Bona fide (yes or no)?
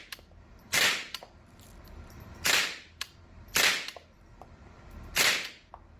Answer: no